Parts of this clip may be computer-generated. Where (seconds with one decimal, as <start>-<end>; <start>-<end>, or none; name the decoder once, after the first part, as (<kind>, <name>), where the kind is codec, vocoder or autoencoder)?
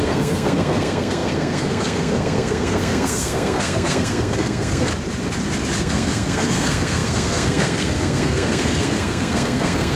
0.0-4.9 (codec, SNAC); 5.8-10.0